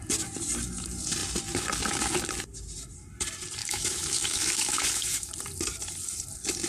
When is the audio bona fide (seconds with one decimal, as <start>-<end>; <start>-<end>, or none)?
0.0-3.6; 5.3-6.7